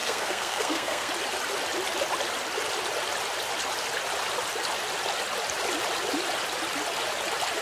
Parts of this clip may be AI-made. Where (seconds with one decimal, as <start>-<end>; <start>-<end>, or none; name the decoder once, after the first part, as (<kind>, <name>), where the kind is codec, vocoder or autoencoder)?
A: 0.0-1.1 (codec, SNAC)

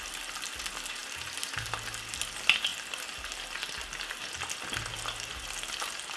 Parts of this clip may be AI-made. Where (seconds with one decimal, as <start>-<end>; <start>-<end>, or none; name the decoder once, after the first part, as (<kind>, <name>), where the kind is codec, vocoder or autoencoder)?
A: none

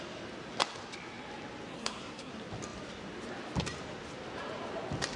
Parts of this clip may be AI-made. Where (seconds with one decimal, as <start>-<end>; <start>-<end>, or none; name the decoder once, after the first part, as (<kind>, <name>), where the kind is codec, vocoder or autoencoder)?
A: 1.7-2.3 (codec, SNAC)